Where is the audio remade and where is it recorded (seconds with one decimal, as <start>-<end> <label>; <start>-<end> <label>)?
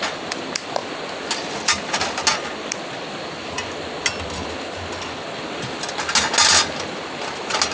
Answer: 0.0-7.7 recorded